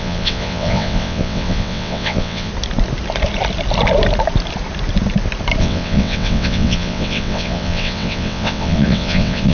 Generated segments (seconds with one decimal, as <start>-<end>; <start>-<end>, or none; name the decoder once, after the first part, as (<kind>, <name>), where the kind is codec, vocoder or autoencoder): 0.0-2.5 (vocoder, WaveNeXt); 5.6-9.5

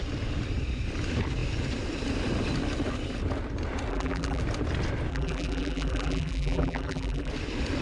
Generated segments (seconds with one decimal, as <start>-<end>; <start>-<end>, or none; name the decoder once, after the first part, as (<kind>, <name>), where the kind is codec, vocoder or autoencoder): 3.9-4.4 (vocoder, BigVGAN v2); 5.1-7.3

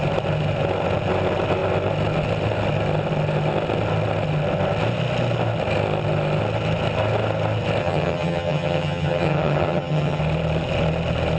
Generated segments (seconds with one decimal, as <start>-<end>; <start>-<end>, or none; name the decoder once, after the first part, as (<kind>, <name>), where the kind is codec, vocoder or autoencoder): 7.8-10.2 (vocoder, HiFi-GAN)

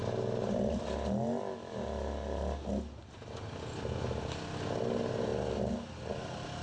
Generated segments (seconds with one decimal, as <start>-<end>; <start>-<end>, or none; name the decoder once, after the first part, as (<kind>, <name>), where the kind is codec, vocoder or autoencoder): none

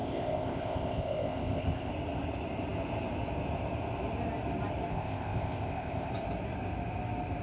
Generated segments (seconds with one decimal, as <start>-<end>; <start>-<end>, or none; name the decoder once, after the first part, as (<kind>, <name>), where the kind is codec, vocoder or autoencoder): 0.0-1.9 (codec, ZipCodec); 4.9-6.1

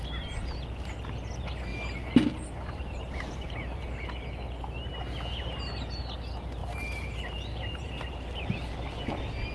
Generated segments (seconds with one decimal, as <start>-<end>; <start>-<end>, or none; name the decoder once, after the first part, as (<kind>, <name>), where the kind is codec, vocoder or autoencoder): 1.7-3.8 (vocoder, BigVGAN v2); 6.6-8.1